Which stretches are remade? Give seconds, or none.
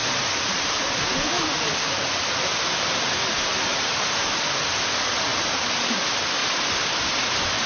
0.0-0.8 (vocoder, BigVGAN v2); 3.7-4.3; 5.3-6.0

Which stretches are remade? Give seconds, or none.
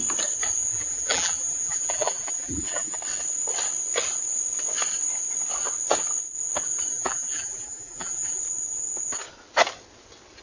0.7-3.0 (vocoder, BigVGAN v2); 6.9-8.4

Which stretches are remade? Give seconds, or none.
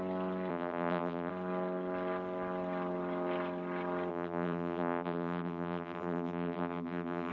0.5-1.3 (vocoder, BigVGAN v2); 4.1-7.3